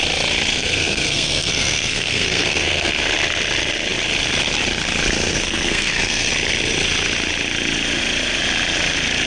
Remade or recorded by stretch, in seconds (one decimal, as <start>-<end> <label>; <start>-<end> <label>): 0.0-0.5 recorded; 0.5-2.9 remade; 2.9-5.3 recorded; 5.3-6.3 remade; 6.3-9.3 recorded